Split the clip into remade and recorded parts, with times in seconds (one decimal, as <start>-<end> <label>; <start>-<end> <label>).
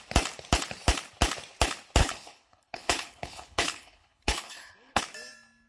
0.0-2.0 recorded; 2.0-5.0 remade; 5.0-5.7 recorded